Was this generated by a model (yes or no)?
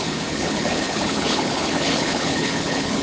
yes